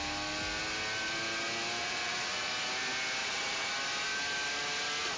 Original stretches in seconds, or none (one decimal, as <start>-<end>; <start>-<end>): 0.0-1.8; 2.5-3.2; 3.7-5.2